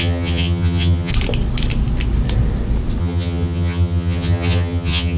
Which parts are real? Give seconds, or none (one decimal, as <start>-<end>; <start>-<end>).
1.1-3.0